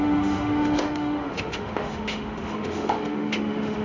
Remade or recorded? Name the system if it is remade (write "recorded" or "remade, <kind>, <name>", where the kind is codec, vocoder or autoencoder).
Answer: remade, autoencoder, DAC-VAE